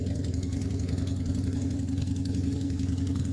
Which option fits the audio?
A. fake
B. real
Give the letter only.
A